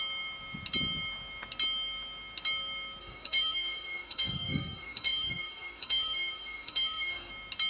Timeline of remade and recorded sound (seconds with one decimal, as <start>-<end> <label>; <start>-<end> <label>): 0.0-3.0 recorded; 3.0-7.3 remade; 7.3-7.7 recorded